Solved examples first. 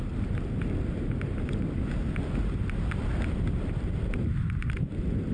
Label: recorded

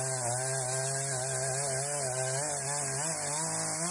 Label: recorded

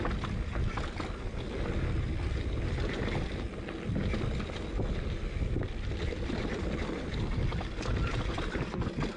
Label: recorded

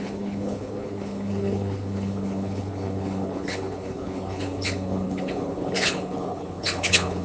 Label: remade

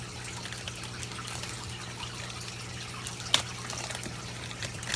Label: recorded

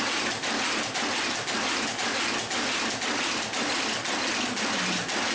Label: recorded